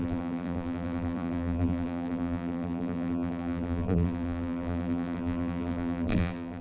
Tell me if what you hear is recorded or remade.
remade